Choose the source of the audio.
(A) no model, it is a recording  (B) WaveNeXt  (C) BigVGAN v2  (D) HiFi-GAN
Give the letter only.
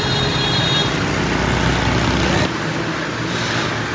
A